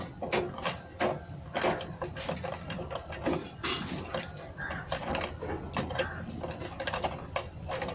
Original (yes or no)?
yes